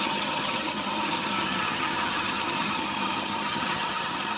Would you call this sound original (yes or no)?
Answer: no